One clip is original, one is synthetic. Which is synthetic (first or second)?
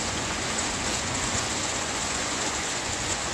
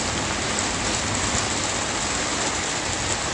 first